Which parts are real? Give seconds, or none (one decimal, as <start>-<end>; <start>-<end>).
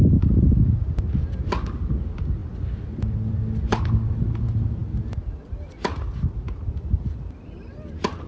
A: 0.0-8.3